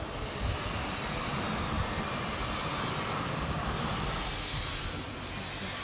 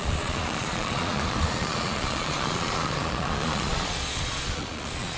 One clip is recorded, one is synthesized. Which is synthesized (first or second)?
second